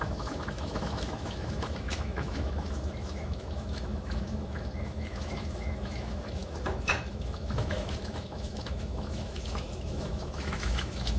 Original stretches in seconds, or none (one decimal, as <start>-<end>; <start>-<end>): none

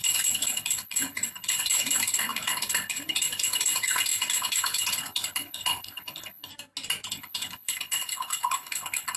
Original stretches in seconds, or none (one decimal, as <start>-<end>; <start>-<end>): 6.5-7.1

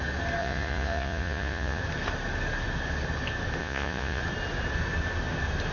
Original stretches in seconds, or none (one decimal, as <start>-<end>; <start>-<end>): 0.0-0.4; 1.8-3.6; 4.2-5.7

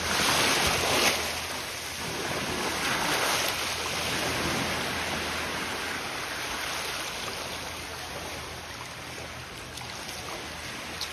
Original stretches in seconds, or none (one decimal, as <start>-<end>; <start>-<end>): 0.0-11.1

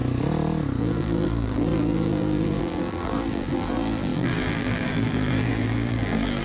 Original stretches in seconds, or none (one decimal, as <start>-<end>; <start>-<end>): 0.0-0.8